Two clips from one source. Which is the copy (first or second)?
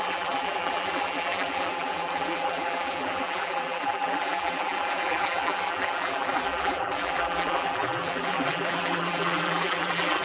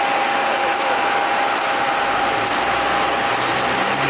first